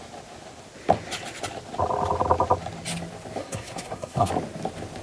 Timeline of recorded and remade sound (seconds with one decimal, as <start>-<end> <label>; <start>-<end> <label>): 0.0-3.4 recorded; 3.4-4.3 remade; 4.3-5.0 recorded